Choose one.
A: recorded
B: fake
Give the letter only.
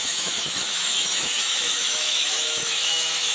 B